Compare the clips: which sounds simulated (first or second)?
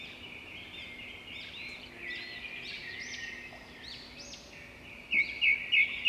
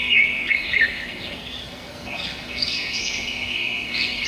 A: second